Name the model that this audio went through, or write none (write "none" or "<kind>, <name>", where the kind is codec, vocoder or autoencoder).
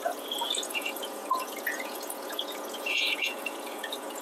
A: vocoder, Vocos